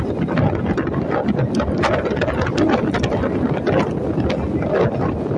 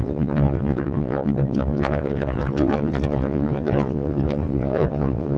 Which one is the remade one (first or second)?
second